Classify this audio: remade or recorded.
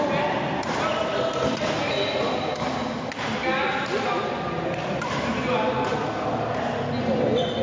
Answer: recorded